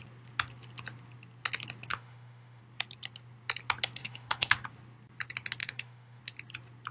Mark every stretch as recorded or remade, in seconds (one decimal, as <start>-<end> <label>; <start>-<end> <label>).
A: 0.0-1.9 recorded; 1.9-2.6 remade; 2.6-4.0 recorded; 4.0-4.5 remade; 4.5-5.6 recorded; 5.6-6.2 remade; 6.2-6.9 recorded